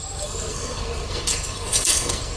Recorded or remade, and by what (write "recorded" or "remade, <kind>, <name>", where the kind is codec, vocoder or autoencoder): remade, codec, SNAC